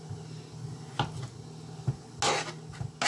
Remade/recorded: recorded